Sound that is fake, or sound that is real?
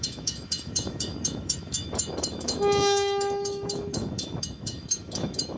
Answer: fake